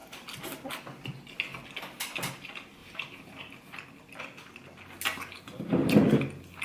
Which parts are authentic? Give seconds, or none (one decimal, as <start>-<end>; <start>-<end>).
0.7-2.8; 3.4-6.6